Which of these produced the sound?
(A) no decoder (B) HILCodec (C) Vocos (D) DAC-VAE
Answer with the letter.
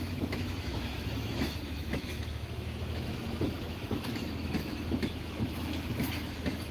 D